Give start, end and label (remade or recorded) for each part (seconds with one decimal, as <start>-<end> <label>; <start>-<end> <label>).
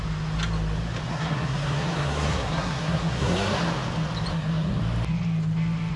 0.0-1.1 recorded; 1.1-3.7 remade; 3.7-4.3 recorded; 4.3-4.8 remade; 4.8-6.0 recorded